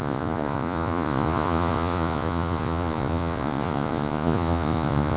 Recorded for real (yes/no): no